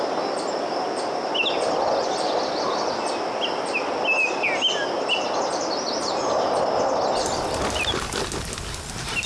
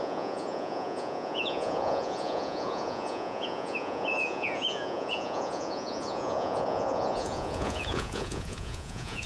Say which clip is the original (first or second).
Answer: first